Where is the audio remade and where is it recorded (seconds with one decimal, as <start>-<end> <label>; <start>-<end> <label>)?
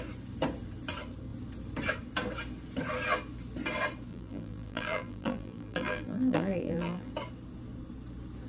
0.0-4.1 recorded; 4.1-7.1 remade; 7.1-8.5 recorded